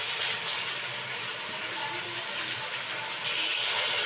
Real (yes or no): yes